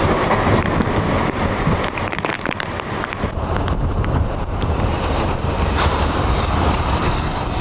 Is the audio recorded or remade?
remade